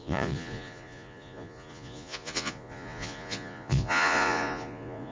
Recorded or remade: remade